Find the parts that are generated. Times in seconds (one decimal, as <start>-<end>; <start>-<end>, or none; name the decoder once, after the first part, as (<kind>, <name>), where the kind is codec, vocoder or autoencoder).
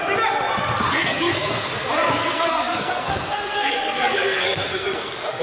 1.0-1.7 (codec, SNAC); 2.2-5.4